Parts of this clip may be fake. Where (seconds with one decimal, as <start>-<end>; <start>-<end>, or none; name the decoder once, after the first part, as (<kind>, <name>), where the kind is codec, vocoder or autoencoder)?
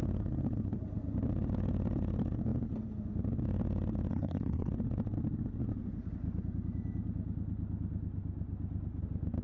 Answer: 4.1-4.7 (codec, SNAC)